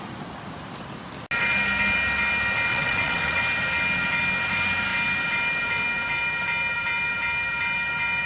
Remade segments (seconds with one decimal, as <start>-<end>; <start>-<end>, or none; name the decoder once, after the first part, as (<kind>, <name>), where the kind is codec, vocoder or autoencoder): 2.7-3.4 (vocoder, WaveNeXt)

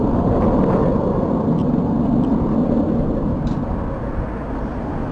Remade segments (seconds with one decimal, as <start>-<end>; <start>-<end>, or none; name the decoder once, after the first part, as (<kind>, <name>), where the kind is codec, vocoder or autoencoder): none